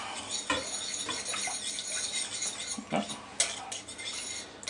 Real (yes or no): yes